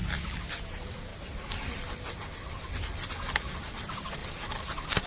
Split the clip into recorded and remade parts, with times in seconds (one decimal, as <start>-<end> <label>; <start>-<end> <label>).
0.0-5.1 recorded